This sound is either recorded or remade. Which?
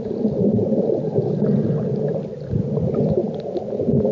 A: recorded